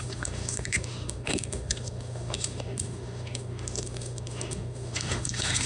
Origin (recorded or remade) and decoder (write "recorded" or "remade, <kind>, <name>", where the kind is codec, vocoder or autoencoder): remade, autoencoder, DAC-VAE